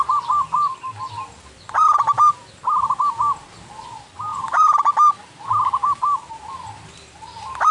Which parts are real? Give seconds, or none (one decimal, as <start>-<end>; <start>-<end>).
0.0-7.7